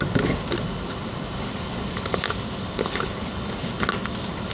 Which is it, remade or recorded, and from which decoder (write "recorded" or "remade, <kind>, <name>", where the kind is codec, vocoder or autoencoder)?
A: recorded